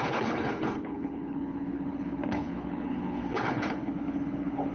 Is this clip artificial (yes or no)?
yes